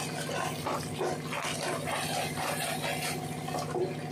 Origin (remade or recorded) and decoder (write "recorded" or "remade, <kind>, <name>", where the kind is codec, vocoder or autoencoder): recorded